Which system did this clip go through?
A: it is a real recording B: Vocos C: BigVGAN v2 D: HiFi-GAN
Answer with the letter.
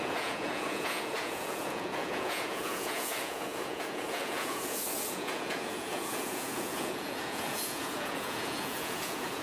B